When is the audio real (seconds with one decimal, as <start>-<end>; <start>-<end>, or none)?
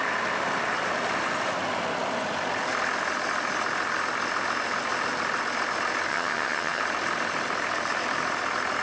0.0-6.1; 6.8-8.8